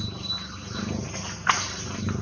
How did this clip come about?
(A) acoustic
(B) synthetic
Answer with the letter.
A